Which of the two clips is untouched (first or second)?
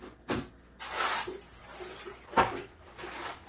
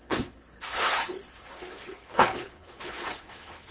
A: first